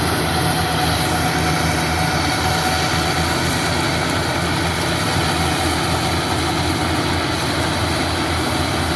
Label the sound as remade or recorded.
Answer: recorded